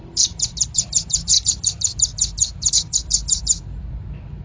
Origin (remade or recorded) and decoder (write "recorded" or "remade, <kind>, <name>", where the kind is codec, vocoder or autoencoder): remade, vocoder, BigVGAN v2